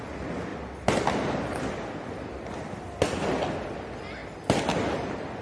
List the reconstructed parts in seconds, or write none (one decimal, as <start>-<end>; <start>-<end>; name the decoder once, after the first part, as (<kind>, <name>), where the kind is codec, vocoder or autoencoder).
none